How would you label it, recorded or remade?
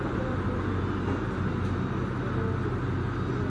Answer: recorded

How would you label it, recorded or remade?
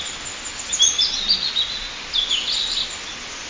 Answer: recorded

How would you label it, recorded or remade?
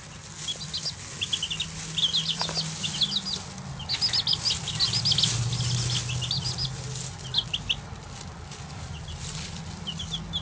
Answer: recorded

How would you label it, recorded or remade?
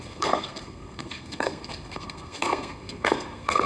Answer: remade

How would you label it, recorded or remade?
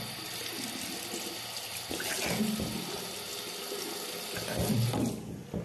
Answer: recorded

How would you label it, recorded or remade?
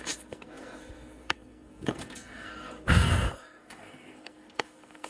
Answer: remade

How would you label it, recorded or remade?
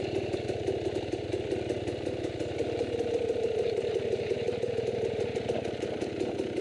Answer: recorded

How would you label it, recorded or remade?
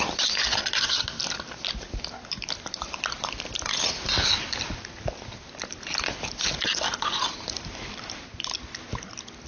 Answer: recorded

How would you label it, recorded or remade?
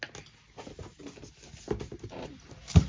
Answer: recorded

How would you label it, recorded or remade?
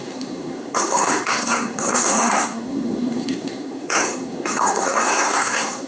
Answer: remade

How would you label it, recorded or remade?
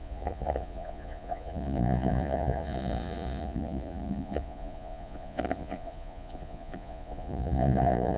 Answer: remade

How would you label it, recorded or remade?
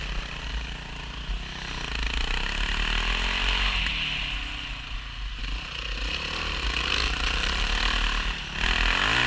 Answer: recorded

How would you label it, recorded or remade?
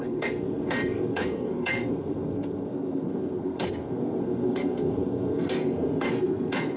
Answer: remade